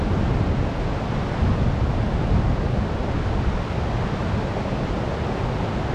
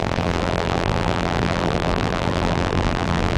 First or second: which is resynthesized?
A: second